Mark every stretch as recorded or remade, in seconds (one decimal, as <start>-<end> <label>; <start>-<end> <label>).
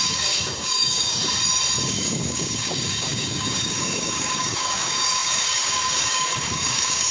0.0-1.2 remade; 1.2-1.8 recorded; 1.8-7.1 remade